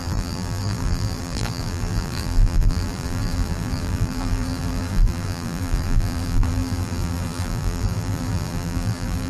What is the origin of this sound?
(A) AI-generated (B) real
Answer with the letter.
A